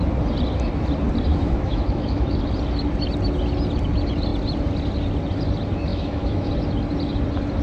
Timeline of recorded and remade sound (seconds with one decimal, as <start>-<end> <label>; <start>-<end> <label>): 0.0-1.3 recorded; 1.3-2.4 remade; 2.4-5.9 recorded; 5.9-6.5 remade; 6.5-7.6 recorded